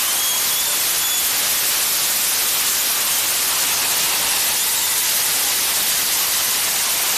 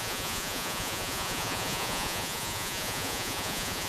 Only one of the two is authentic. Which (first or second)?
first